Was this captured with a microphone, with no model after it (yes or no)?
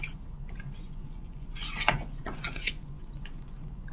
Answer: no